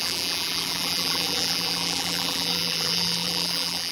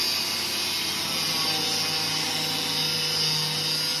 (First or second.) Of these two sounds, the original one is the second